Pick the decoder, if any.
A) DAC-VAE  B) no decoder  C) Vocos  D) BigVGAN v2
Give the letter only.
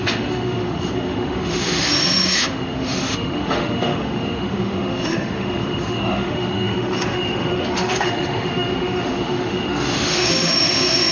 A